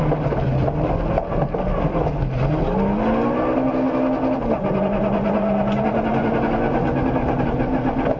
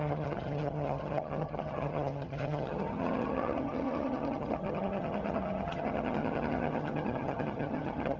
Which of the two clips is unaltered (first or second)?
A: first